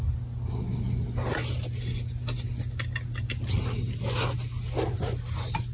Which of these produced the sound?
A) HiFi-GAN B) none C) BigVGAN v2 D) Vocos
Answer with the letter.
B